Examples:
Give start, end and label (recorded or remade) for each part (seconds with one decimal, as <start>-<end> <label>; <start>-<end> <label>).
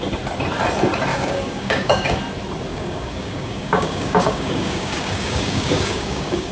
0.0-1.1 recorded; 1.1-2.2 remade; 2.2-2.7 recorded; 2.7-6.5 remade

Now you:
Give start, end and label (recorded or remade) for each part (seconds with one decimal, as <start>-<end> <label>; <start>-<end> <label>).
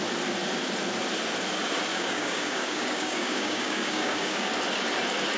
0.0-1.9 recorded; 1.9-4.5 remade; 4.5-5.4 recorded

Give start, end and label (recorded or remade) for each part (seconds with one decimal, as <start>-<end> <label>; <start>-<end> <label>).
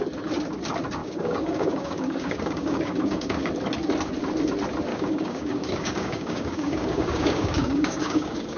0.0-1.0 recorded; 1.0-3.5 remade; 3.5-4.9 recorded; 4.9-8.6 remade